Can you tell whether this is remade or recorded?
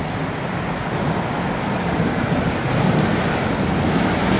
recorded